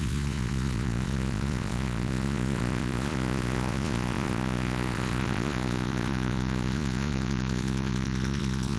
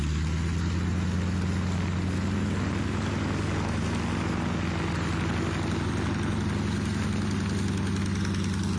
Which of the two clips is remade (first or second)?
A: first